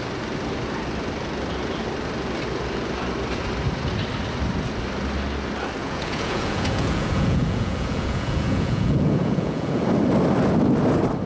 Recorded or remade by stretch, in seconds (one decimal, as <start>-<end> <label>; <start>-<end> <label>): 0.0-5.8 recorded; 5.8-9.8 remade; 9.8-11.3 recorded